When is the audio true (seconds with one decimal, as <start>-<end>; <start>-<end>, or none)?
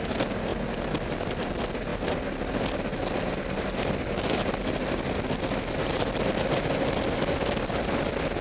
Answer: 0.0-8.4